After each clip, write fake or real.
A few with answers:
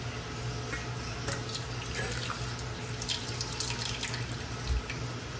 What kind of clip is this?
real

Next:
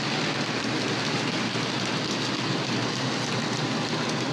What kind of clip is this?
real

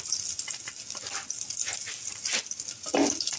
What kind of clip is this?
real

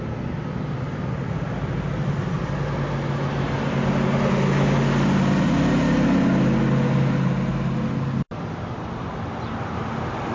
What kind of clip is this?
real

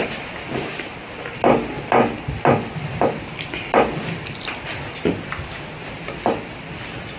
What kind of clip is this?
real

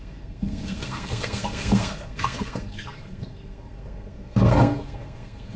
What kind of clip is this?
fake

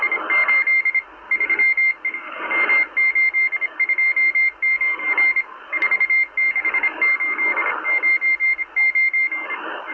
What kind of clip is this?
real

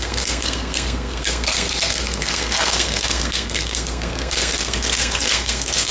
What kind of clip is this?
fake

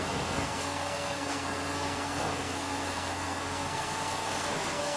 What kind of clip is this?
fake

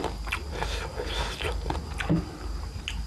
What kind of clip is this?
real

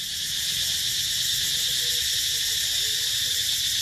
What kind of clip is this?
real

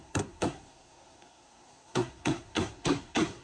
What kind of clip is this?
fake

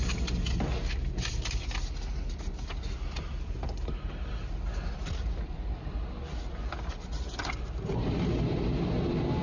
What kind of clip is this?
real